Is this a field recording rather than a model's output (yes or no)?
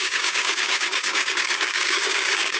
no